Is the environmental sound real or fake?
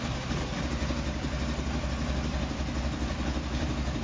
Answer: fake